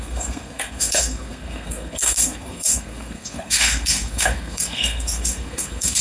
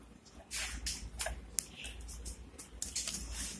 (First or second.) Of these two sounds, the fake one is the first